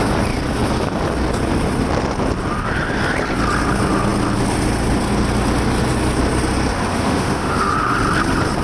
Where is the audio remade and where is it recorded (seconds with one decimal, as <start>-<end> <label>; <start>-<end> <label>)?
0.0-6.9 recorded; 6.9-7.7 remade; 7.7-8.6 recorded